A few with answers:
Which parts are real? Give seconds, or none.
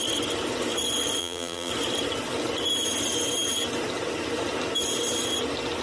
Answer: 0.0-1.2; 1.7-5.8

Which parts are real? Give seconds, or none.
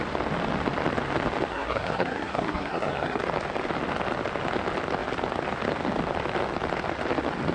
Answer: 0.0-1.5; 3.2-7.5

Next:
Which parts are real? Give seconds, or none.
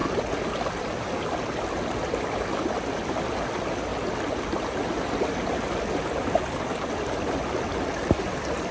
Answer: 0.0-8.7